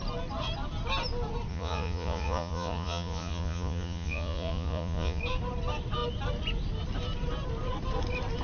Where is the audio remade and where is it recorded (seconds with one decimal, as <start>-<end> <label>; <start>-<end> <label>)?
0.0-1.5 recorded; 1.5-5.2 remade; 5.2-8.4 recorded